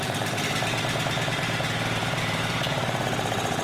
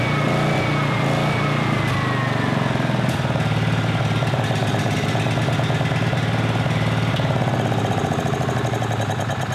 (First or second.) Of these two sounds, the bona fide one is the second